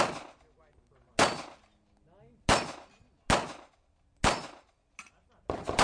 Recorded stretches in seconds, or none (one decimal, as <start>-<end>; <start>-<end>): 0.0-5.8